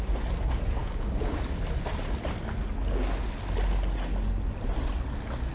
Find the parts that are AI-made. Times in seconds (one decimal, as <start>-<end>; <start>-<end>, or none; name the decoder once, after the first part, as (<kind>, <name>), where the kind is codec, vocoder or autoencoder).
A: 0.8-1.4 (codec, DAC)